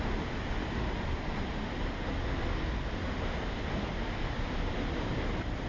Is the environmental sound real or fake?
real